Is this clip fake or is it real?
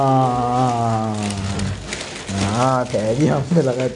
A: real